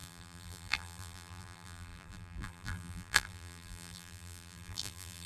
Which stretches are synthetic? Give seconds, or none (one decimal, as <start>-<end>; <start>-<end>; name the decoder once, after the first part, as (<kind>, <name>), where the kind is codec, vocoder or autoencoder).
0.0-5.3 (vocoder, BigVGAN v2)